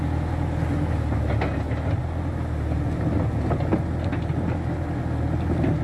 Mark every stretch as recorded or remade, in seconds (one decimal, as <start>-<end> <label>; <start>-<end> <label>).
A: 0.0-5.8 recorded